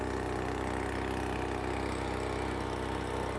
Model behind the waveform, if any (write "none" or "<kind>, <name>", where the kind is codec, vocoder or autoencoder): none